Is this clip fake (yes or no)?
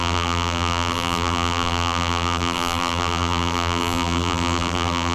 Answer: yes